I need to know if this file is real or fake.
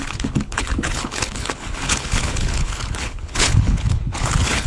fake